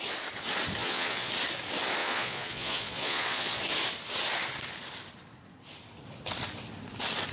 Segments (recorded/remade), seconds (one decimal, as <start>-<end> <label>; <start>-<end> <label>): 0.0-0.8 recorded; 0.8-1.3 remade; 1.3-2.0 recorded; 2.0-3.6 remade; 3.6-7.3 recorded